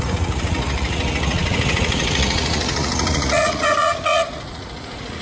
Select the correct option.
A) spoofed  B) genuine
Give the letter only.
A